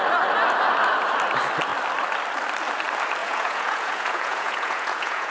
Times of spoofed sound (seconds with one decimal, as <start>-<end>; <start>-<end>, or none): 3.2-5.3